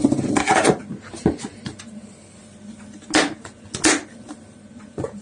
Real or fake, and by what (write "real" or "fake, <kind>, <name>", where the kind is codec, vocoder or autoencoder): real